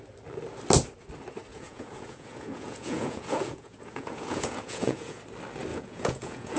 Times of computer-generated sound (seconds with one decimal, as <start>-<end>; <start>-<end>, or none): 1.5-5.2; 5.7-6.6